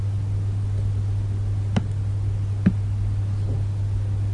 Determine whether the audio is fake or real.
real